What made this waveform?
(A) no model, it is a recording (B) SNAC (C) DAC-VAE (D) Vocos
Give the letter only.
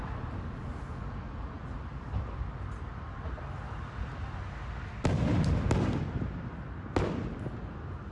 A